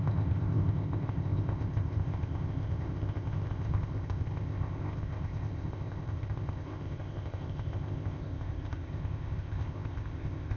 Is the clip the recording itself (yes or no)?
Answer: no